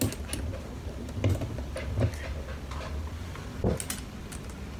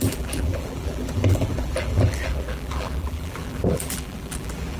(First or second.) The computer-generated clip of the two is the second